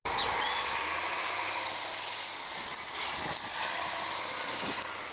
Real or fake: real